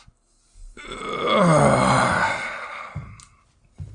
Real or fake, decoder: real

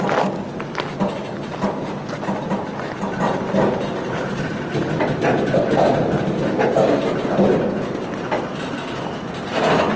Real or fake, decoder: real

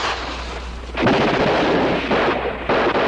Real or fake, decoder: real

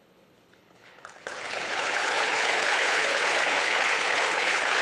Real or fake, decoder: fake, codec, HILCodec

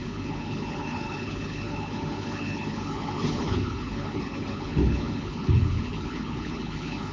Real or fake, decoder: fake, codec, HILCodec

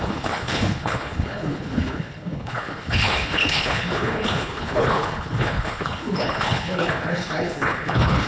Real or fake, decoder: fake, codec, HILCodec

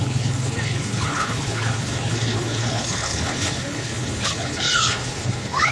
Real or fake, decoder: fake, codec, HILCodec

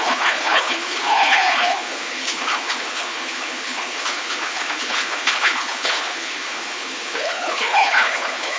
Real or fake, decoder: fake, codec, HILCodec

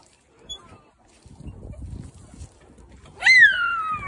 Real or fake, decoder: real